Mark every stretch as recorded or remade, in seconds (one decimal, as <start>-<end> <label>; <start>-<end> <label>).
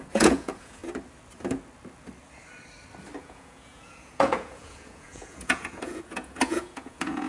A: 0.0-0.8 remade; 0.8-3.2 recorded; 3.2-7.3 remade